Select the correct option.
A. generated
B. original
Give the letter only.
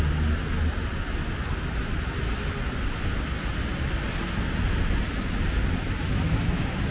B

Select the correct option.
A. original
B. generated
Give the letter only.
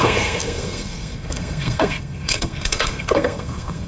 B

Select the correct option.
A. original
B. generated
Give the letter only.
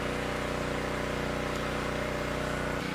A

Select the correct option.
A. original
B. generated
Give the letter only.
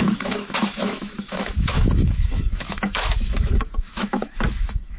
B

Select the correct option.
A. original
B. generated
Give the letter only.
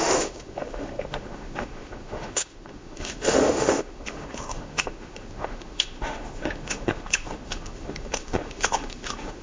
B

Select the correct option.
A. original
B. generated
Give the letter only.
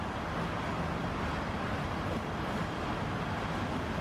A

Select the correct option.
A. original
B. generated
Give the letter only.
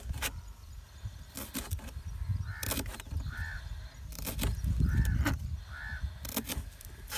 A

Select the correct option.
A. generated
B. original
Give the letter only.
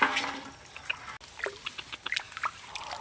B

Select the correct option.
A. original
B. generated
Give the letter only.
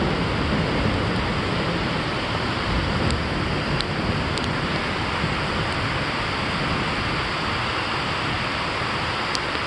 A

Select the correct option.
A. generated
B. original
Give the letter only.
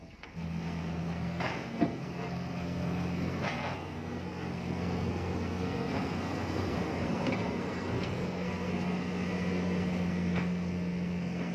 A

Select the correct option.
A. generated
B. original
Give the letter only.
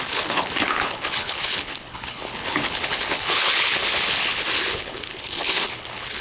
A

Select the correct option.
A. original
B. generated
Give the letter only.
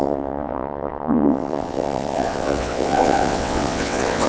B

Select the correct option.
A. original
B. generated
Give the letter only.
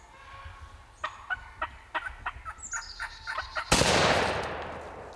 A